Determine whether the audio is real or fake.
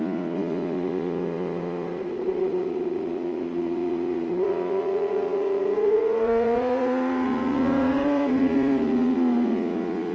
fake